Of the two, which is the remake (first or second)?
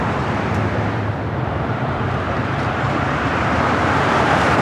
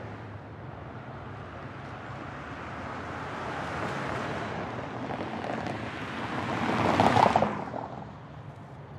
first